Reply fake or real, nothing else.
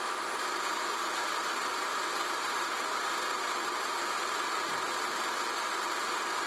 fake